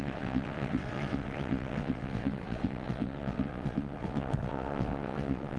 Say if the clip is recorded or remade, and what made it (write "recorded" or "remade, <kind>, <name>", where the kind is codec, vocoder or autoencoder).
remade, vocoder, WaveNeXt